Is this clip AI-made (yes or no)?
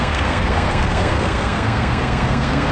yes